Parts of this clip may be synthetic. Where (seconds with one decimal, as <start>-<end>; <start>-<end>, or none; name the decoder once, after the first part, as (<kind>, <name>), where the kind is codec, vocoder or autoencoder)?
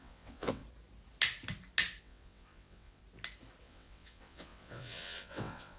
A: 0.0-0.6 (vocoder, WaveNeXt); 2.0-3.0; 3.6-5.8